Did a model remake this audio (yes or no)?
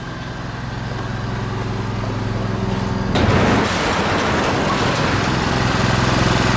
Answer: no